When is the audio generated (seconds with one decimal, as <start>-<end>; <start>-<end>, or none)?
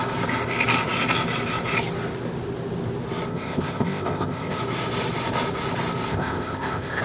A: 3.3-4.6; 6.1-7.0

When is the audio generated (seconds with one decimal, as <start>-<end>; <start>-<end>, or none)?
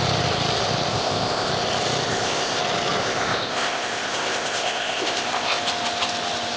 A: 0.9-1.5; 2.1-2.6; 3.0-5.6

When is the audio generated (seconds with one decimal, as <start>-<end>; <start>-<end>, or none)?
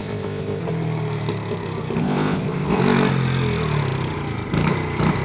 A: 0.0-0.6; 2.0-2.8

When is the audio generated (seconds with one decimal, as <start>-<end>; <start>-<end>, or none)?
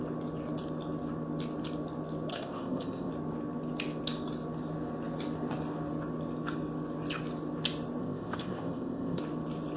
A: 2.3-3.1; 8.0-9.2